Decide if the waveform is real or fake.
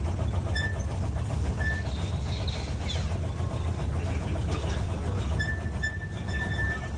real